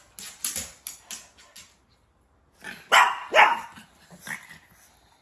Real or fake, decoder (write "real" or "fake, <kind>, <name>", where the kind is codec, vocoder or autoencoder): real